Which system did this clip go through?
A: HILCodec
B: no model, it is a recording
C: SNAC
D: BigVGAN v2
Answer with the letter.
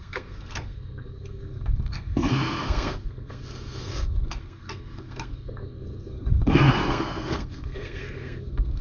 C